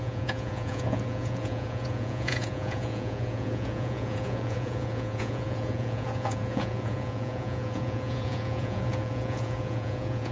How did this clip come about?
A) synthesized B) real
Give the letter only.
A